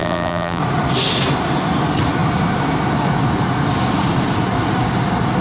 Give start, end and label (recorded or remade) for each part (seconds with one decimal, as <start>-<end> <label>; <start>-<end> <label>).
0.0-0.6 remade; 0.6-5.4 recorded